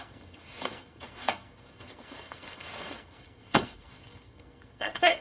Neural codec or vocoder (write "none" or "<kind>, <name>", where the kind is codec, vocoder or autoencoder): codec, SNAC